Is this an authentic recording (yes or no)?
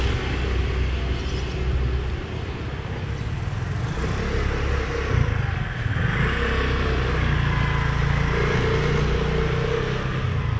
yes